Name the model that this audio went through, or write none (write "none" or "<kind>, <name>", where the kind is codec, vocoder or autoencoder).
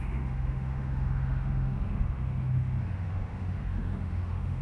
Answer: autoencoder, DAC-VAE